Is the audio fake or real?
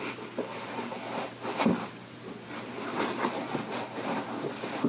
real